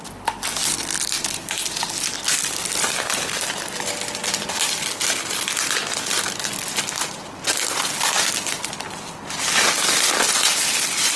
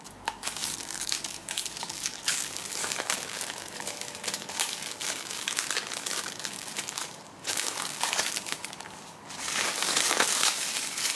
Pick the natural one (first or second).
first